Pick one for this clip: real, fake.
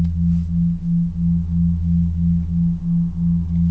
real